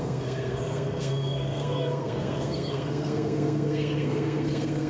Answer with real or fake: fake